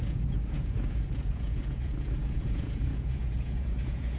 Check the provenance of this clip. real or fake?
fake